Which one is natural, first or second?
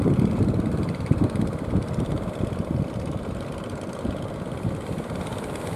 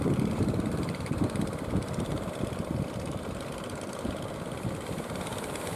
first